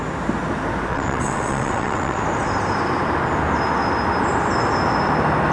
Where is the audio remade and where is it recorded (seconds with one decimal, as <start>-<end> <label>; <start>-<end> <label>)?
0.0-0.9 recorded; 0.9-2.2 remade; 2.2-5.5 recorded